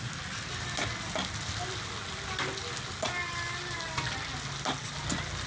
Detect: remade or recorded recorded